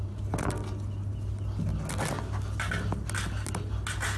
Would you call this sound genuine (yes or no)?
yes